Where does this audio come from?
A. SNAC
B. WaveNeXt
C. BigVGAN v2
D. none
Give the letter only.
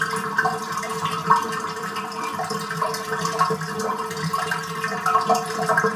D